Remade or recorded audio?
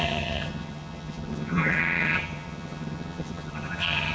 remade